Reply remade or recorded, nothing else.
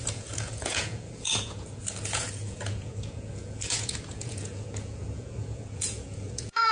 remade